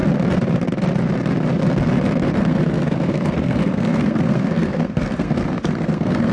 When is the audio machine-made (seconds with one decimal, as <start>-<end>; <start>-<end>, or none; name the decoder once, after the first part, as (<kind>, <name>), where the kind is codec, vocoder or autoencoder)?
2.4-6.3 (codec, SNAC)